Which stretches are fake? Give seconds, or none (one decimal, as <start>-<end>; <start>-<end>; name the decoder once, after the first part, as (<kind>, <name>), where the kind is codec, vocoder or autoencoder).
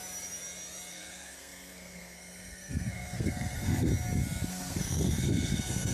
0.9-3.9 (codec, SNAC); 4.5-5.9